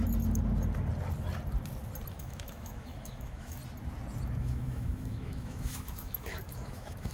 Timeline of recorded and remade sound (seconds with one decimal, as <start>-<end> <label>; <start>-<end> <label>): 0.0-2.1 recorded; 2.1-3.6 remade; 3.6-4.4 recorded; 4.4-7.1 remade